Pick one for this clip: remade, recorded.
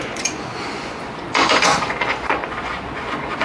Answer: remade